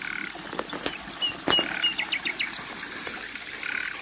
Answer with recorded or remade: recorded